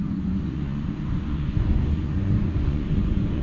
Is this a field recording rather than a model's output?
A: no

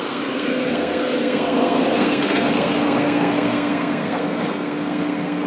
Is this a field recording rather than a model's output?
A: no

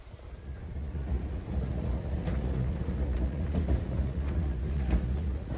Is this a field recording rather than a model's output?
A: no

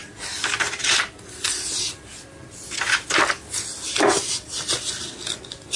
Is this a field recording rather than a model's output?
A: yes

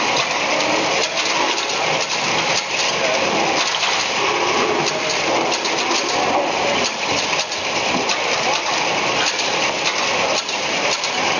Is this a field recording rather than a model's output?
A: yes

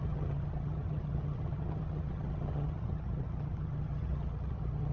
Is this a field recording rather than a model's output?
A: no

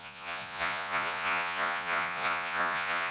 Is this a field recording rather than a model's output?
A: no